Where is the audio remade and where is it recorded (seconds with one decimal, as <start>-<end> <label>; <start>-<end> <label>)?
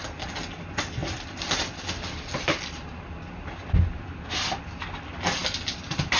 0.0-6.2 recorded